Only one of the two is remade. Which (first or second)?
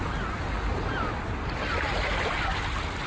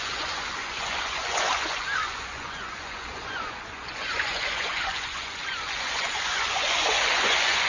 second